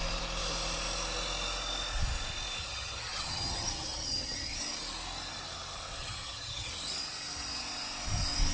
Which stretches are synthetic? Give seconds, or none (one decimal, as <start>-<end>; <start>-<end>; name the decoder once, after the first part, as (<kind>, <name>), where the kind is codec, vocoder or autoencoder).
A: 2.6-4.6 (vocoder, HiFi-GAN); 6.0-6.7